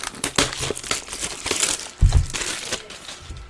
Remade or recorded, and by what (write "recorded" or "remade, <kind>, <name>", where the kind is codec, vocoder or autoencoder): recorded